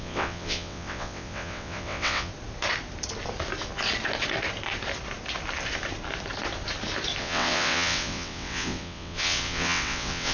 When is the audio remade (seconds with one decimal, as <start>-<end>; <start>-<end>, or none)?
0.0-2.3; 7.2-10.3